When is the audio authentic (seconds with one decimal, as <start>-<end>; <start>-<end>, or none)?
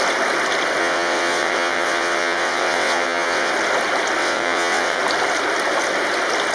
0.0-0.8; 3.5-4.2; 5.0-6.5